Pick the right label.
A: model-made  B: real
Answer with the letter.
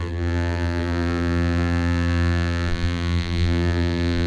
A